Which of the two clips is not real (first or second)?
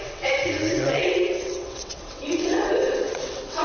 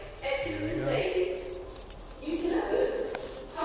first